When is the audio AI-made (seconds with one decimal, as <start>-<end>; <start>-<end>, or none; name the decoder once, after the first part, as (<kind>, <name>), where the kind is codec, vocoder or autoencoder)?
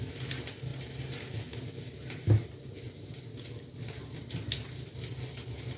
none